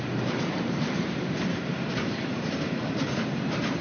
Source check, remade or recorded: remade